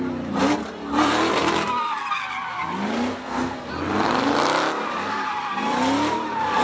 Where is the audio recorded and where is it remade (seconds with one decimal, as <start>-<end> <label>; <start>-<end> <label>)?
0.0-3.1 recorded; 3.1-3.7 remade; 3.7-6.6 recorded